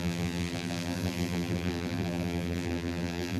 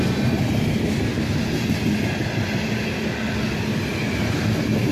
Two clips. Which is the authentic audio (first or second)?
second